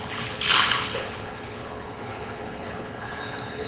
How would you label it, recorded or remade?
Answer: remade